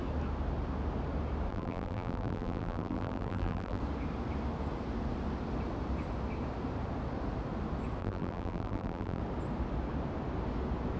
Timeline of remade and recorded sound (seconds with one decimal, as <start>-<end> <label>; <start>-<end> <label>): 0.0-1.5 recorded; 1.5-3.8 remade; 3.8-8.0 recorded; 8.0-9.2 remade; 9.2-11.0 recorded